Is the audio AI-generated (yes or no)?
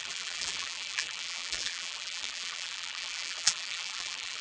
yes